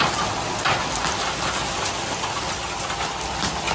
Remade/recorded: recorded